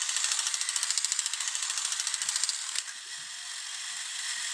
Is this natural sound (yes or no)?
yes